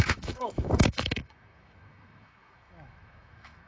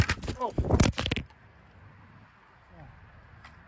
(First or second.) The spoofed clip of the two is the first